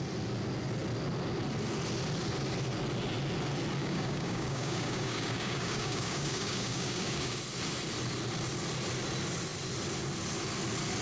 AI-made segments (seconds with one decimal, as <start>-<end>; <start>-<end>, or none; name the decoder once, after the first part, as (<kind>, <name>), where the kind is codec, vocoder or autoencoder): 3.8-7.4 (codec, DAC)